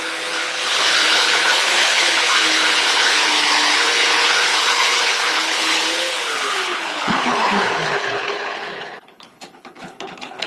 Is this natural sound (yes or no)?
no